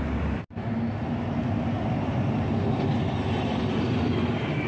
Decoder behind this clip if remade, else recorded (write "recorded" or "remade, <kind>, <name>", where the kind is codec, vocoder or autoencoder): recorded